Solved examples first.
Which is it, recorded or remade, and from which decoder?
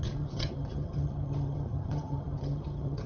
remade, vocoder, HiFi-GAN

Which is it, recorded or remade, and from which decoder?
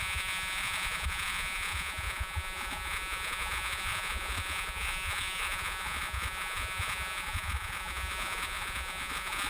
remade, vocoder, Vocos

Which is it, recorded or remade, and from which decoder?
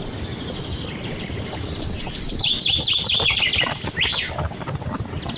recorded